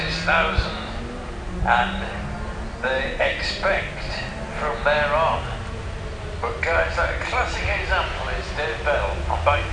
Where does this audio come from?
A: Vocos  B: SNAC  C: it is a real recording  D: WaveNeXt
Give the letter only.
C